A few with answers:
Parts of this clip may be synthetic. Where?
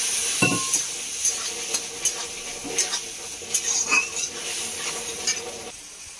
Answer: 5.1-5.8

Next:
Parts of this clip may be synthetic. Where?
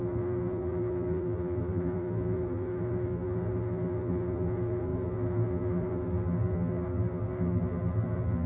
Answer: 0.0-8.5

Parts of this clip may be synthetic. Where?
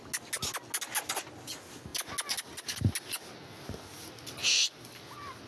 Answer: none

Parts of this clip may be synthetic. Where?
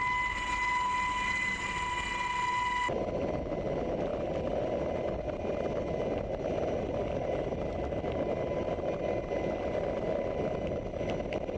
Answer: none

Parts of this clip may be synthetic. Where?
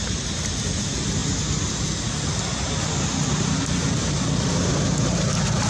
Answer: none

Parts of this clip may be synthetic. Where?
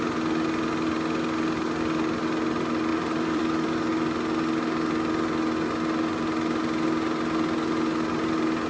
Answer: 2.9-3.4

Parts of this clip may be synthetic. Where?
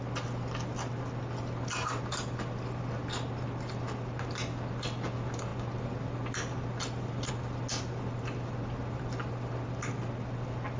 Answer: none